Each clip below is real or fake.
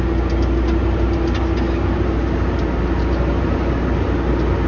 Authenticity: real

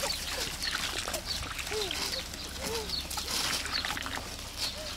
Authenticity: real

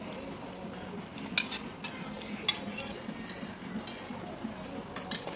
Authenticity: real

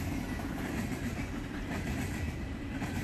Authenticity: fake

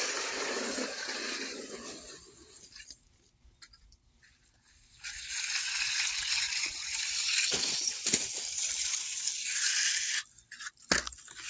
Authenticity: real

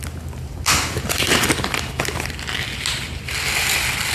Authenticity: real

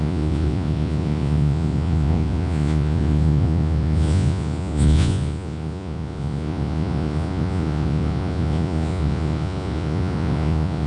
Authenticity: fake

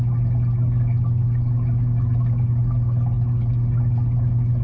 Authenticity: real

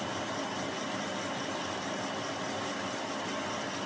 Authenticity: real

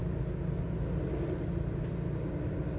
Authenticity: real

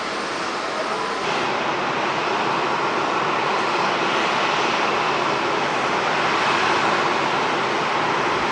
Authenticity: real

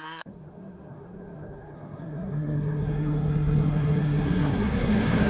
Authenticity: fake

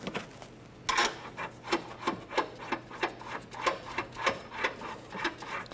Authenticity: real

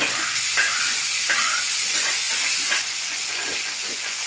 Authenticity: fake